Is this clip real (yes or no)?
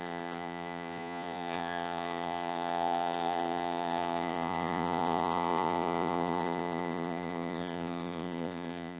no